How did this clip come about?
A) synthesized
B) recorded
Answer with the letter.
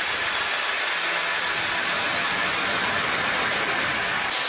B